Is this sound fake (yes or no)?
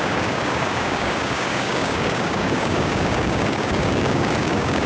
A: yes